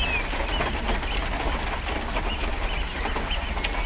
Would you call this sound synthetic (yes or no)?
no